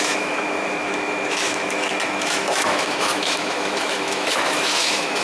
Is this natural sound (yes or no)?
no